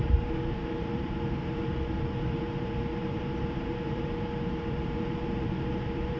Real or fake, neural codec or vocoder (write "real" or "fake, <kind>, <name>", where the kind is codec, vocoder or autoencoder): fake, vocoder, BigVGAN v2